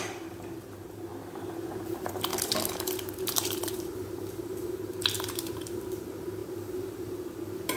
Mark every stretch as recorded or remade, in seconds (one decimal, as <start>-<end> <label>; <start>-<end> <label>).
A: 0.0-1.1 remade; 1.1-1.8 recorded; 1.8-2.3 remade; 2.3-3.2 recorded; 3.2-7.8 remade